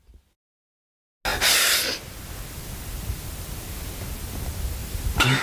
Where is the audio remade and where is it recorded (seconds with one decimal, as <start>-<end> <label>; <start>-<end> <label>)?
0.0-4.8 recorded; 4.8-5.4 remade